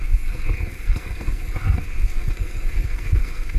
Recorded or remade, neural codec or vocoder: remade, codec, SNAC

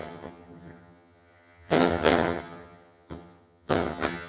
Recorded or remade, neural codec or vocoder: remade, vocoder, HiFi-GAN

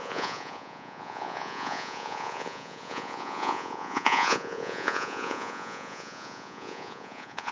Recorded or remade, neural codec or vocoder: remade, vocoder, Vocos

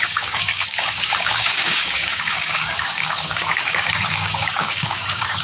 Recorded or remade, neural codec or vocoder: remade, codec, DAC